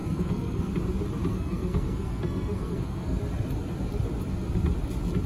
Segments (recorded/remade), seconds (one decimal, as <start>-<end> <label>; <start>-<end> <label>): 0.0-0.7 remade; 0.7-1.3 recorded; 1.3-3.2 remade; 3.2-5.3 recorded